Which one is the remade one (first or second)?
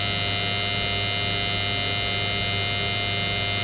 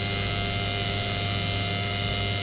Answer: second